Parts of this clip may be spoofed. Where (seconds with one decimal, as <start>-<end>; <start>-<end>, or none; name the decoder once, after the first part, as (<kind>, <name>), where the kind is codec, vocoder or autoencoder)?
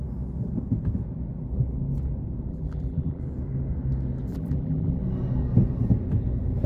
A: 2.5-3.2 (vocoder, BigVGAN v2); 4.3-5.0